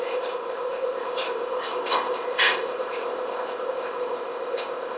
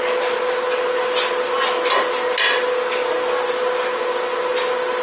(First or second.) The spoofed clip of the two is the first